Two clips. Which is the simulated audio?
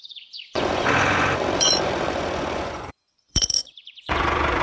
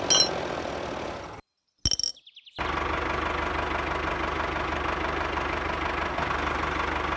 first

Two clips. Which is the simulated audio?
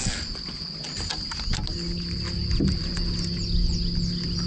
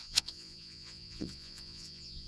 second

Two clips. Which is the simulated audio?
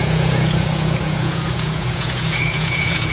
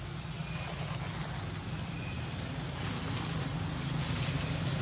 first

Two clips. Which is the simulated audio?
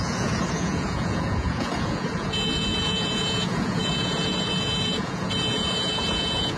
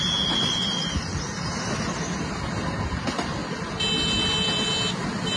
first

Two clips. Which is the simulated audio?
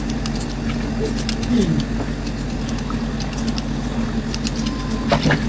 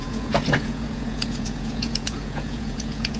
second